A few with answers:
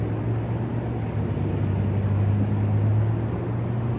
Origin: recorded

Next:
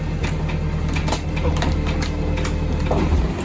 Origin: recorded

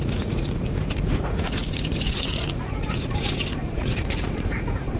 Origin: remade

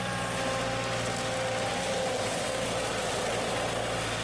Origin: recorded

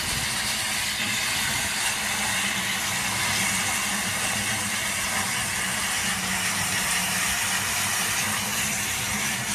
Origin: recorded